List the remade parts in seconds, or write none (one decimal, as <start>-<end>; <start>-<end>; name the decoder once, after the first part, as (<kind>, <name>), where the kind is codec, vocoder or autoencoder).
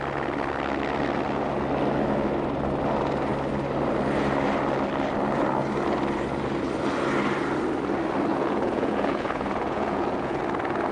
8.3-10.4 (vocoder, Vocos)